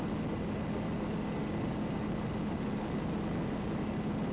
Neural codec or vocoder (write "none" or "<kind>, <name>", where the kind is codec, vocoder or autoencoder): none